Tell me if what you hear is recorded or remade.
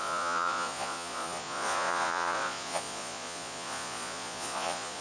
remade